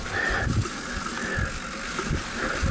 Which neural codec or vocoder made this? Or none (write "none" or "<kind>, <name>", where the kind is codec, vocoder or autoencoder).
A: none